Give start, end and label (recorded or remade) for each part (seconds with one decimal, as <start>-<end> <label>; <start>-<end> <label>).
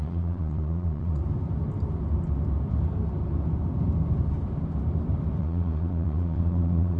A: 0.0-1.2 remade; 1.2-5.4 recorded; 5.4-7.0 remade